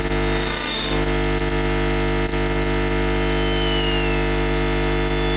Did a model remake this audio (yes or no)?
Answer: no